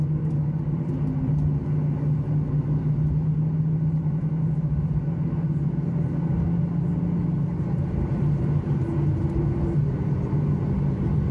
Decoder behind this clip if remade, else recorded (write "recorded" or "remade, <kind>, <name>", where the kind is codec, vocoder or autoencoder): recorded